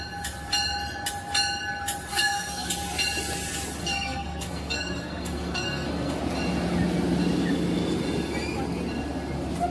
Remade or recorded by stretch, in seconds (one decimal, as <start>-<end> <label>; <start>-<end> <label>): 0.0-2.1 recorded; 2.1-2.7 remade; 2.7-3.8 recorded; 3.8-6.2 remade; 6.2-9.7 recorded